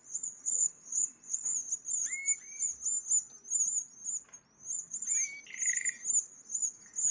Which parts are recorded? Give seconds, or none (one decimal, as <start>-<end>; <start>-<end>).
1.4-7.1